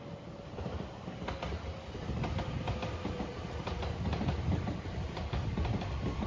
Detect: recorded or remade remade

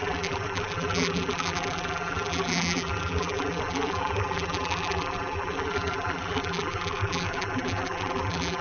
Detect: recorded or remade remade